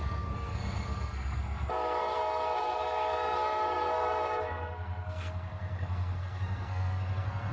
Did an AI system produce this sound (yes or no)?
yes